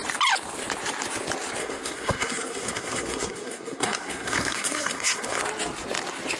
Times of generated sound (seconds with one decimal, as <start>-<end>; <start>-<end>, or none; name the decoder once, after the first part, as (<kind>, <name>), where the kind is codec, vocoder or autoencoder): 1.6-5.4 (codec, SNAC)